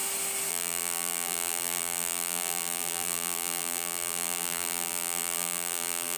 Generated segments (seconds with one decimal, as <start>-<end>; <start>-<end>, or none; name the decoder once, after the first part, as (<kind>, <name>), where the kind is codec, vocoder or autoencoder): 0.5-6.2 (vocoder, BigVGAN v2)